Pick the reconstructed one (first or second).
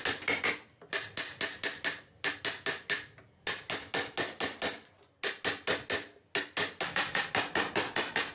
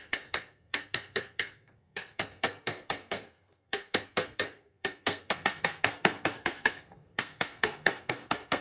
second